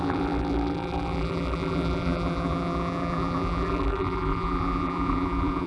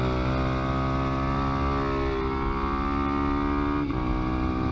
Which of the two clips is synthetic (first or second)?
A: first